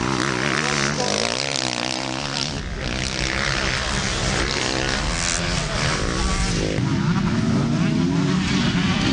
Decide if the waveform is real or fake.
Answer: real